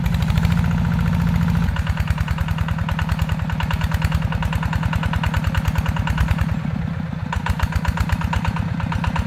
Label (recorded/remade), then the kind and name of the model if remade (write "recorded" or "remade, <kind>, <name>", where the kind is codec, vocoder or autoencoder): recorded